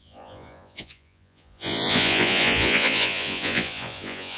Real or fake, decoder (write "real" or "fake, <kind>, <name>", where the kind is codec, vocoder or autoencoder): fake, vocoder, Vocos